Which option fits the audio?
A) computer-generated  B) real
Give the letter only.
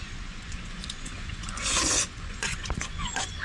A